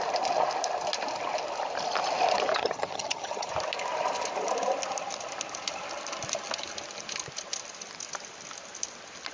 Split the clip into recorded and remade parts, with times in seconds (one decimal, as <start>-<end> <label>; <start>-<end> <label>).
0.0-2.5 recorded; 2.5-3.5 remade; 3.5-9.3 recorded